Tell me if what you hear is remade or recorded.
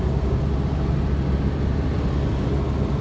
recorded